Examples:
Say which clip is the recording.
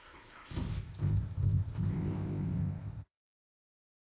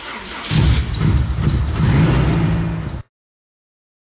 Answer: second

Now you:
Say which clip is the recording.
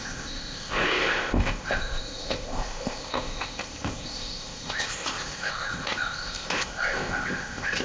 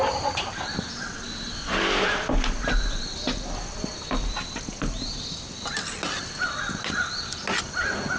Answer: second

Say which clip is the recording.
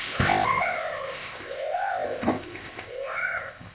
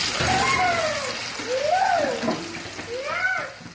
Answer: second